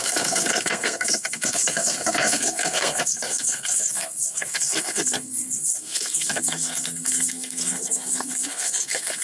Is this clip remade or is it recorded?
remade